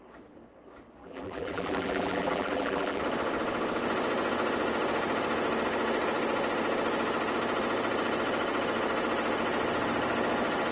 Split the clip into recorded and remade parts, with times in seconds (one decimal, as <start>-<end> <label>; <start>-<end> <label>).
0.0-1.0 recorded; 1.0-3.0 remade; 3.0-10.7 recorded